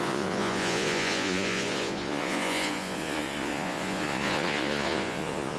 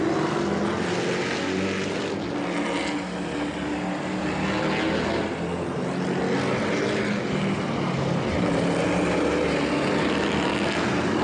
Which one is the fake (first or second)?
first